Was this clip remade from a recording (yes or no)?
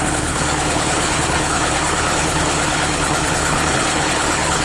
yes